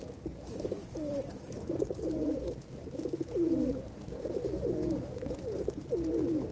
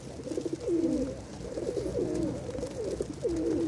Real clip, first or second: second